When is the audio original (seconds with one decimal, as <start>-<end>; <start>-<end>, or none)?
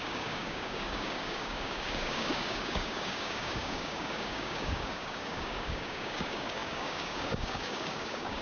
none